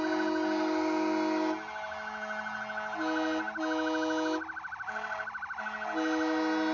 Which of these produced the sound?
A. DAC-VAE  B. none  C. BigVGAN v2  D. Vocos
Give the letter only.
B